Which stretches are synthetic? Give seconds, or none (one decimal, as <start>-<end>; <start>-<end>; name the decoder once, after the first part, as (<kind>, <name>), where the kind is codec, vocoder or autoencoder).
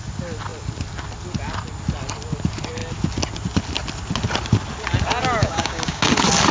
5.4-6.1 (codec, DAC)